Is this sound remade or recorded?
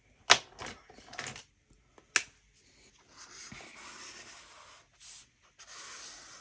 recorded